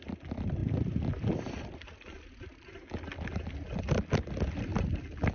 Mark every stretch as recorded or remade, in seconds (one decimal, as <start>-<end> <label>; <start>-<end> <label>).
0.0-5.3 recorded